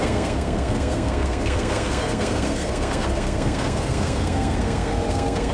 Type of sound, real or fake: fake